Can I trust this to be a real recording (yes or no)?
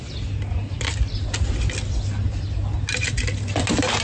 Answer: yes